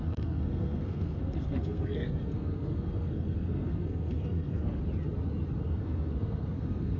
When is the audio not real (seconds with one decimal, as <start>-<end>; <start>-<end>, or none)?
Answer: 0.0-4.8; 5.6-7.0